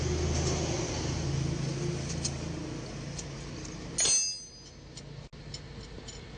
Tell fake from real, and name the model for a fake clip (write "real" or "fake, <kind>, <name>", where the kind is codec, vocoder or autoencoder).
real